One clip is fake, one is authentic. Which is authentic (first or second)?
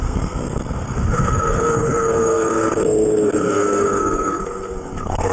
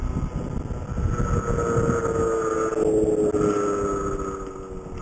second